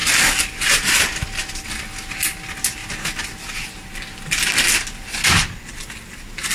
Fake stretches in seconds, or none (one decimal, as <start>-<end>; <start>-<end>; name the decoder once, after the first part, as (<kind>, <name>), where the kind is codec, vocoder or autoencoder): none